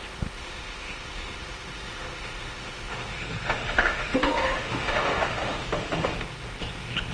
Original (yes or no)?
no